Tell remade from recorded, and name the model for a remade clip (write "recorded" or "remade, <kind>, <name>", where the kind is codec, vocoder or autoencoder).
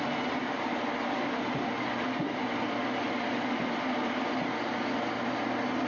recorded